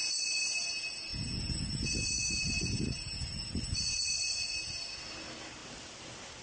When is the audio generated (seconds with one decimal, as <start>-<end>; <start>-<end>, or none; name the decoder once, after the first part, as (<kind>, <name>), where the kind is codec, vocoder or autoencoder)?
none